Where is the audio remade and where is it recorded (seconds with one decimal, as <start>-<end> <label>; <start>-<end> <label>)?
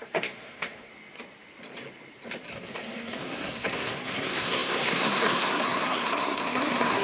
0.0-0.9 remade; 0.9-2.5 recorded; 2.5-7.0 remade